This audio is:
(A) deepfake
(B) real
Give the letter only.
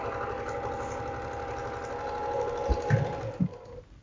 B